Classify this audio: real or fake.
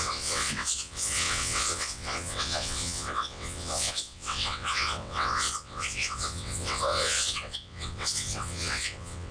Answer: fake